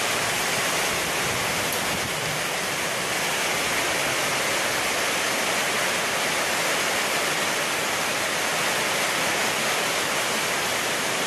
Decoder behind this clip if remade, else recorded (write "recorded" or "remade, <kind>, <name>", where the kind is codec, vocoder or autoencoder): recorded